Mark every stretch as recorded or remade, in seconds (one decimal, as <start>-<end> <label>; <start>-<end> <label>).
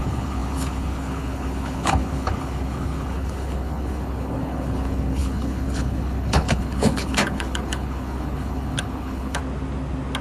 0.0-9.4 remade; 9.4-10.2 recorded